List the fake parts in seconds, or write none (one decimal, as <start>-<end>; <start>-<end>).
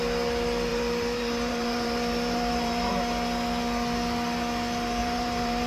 0.7-2.9; 5.0-5.7